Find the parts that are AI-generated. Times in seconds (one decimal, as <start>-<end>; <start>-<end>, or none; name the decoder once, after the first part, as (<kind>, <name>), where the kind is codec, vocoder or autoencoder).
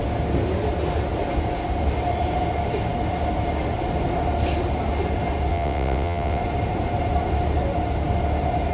5.5-6.4 (vocoder, WaveNeXt)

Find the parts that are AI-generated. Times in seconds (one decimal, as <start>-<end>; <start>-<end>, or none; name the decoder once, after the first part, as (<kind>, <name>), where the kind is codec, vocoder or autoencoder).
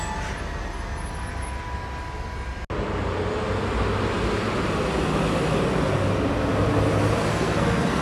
7.3-8.0 (codec, SNAC)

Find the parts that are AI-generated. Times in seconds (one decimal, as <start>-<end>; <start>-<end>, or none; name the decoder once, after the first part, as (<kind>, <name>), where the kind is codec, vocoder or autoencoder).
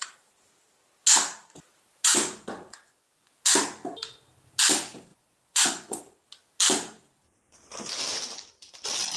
2.1-3.3 (vocoder, Vocos); 5.1-6.0